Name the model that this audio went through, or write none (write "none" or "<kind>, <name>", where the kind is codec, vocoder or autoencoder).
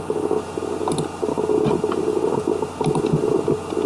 none